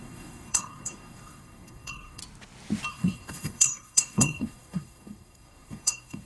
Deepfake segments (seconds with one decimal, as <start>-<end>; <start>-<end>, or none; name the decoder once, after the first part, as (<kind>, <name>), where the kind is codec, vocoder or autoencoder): 0.0-2.2 (codec, SNAC); 2.9-6.3